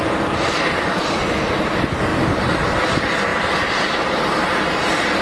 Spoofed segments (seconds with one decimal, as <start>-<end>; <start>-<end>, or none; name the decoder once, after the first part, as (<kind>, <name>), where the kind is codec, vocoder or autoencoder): 2.1-2.6 (vocoder, BigVGAN v2); 3.3-4.3